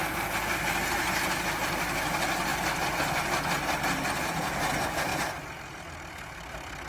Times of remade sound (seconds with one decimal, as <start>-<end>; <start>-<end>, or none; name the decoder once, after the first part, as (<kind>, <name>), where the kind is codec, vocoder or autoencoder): none